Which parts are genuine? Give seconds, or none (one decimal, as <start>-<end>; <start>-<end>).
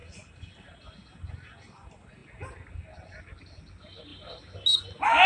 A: 0.0-5.3